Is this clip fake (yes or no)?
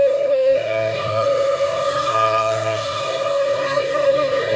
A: yes